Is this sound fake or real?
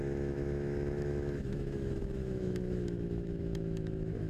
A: fake